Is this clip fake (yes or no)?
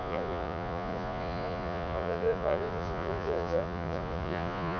yes